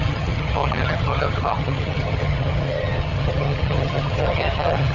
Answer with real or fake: fake